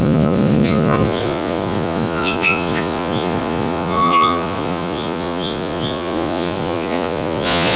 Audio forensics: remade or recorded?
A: remade